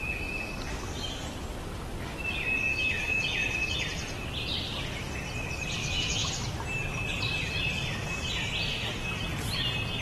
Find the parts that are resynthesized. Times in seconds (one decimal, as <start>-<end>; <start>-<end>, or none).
2.7-3.2; 5.8-6.3